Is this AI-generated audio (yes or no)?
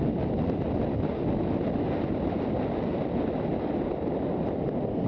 no